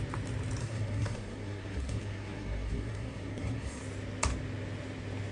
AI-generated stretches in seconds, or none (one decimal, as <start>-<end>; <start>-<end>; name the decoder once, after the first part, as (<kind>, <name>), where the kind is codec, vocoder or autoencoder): 0.6-3.8 (codec, SNAC)